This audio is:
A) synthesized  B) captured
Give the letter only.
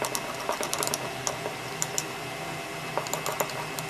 B